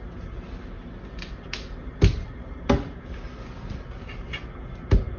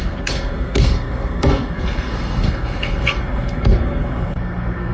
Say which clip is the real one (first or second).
first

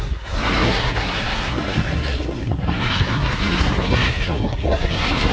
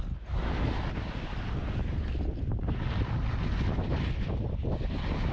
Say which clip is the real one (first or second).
second